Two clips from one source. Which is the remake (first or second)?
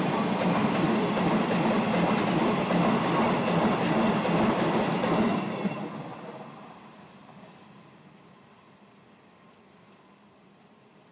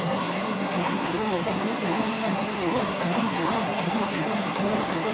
second